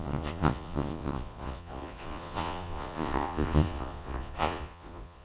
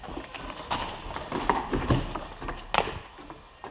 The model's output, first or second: first